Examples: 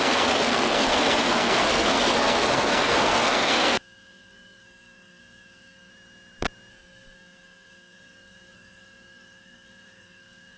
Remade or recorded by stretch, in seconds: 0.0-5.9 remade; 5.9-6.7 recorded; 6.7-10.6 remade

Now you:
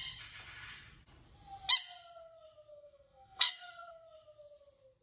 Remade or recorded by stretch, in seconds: 0.0-2.7 recorded; 2.7-3.9 remade; 3.9-5.0 recorded

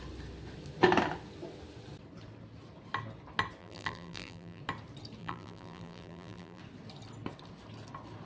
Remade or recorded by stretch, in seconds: 0.0-3.6 recorded; 3.6-4.6 remade; 4.6-5.2 recorded; 5.2-6.6 remade; 6.6-8.2 recorded

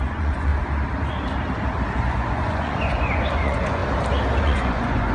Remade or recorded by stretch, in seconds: 0.0-0.5 remade; 0.5-2.0 recorded; 2.0-3.8 remade; 3.8-4.4 recorded; 4.4-5.1 remade

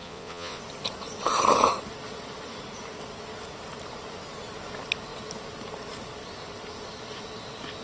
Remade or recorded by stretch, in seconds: 0.0-0.6 remade; 0.6-7.8 recorded

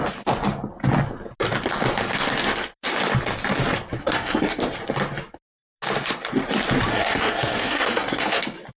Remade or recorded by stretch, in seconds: 0.0-4.0 recorded; 4.0-4.6 remade; 4.6-6.9 recorded; 6.9-8.4 remade; 8.4-8.8 recorded

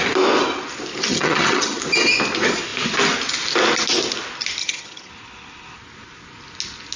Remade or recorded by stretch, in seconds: 0.0-1.1 recorded; 1.1-1.8 remade; 1.8-4.6 recorded; 4.6-5.1 remade; 5.1-7.0 recorded